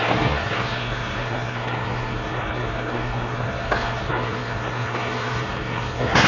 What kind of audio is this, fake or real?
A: fake